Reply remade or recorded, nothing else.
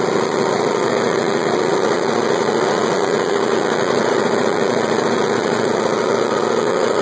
remade